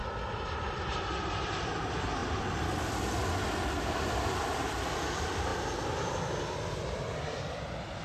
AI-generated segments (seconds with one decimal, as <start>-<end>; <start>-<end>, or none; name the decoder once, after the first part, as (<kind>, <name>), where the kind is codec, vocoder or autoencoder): 0.0-5.5 (vocoder, BigVGAN v2)